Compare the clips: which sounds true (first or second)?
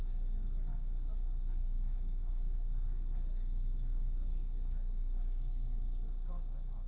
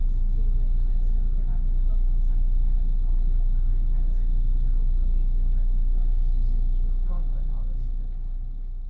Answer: second